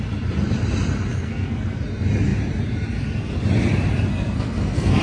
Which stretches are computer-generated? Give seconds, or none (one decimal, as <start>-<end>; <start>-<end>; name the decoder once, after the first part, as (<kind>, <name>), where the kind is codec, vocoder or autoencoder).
1.1-1.8 (codec, SNAC); 4.1-5.0